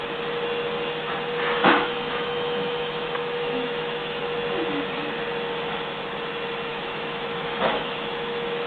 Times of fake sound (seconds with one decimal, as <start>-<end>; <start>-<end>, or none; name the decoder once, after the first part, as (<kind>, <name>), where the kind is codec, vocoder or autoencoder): 1.6-4.2 (autoencoder, DAC-VAE); 6.7-8.7